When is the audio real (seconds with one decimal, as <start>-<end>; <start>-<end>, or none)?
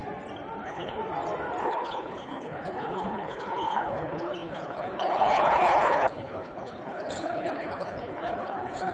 0.0-0.6; 1.0-1.6